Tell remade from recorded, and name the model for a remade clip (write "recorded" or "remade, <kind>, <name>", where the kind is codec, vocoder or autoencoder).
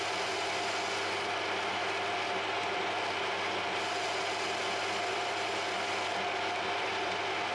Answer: recorded